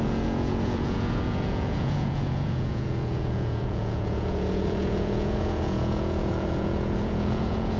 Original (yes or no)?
no